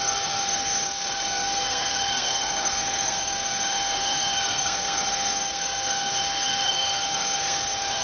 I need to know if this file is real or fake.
fake